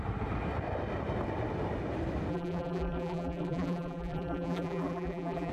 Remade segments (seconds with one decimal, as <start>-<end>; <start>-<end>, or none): 2.3-5.5